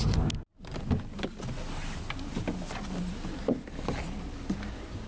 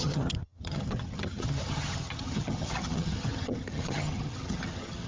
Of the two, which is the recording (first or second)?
first